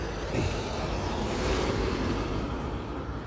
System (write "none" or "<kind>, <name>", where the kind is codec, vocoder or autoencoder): vocoder, BigVGAN v2